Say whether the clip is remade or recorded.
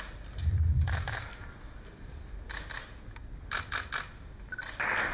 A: recorded